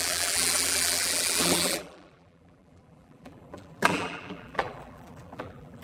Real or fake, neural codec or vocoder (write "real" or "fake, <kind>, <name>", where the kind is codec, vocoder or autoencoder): fake, vocoder, BigVGAN v2